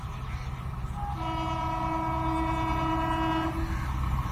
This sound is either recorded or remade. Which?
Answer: recorded